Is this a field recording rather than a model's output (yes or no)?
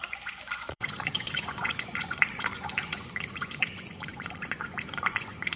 no